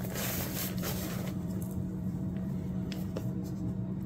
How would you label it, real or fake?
fake